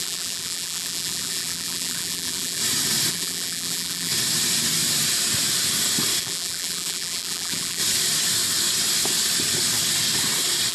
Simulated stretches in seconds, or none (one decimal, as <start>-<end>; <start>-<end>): 0.0-2.6; 3.1-4.1; 6.2-7.8